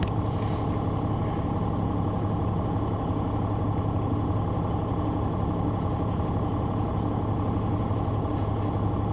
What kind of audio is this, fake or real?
real